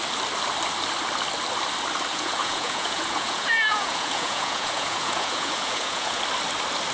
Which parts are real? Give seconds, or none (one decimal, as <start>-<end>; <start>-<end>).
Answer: 0.0-2.1; 6.2-6.9